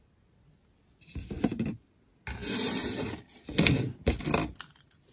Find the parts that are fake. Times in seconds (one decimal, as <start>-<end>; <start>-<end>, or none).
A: none